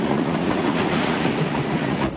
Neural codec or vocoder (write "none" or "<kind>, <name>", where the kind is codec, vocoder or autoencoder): vocoder, Vocos